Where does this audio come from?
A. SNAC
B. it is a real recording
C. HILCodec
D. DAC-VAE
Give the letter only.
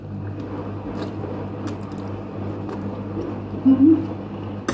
B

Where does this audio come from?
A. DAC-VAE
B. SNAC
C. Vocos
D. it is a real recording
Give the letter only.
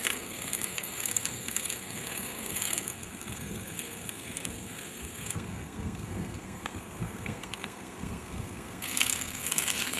B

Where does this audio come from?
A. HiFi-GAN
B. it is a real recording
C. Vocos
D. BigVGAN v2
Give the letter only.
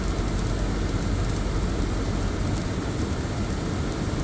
B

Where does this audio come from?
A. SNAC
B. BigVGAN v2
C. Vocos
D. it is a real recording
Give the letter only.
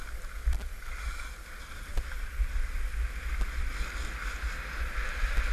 D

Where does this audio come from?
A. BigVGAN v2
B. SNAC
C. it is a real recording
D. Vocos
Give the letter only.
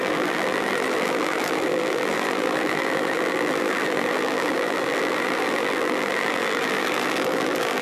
A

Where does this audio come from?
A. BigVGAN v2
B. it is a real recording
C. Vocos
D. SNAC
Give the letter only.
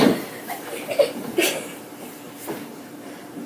A